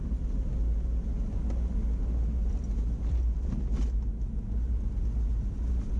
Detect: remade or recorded recorded